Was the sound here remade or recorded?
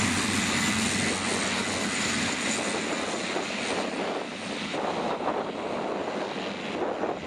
recorded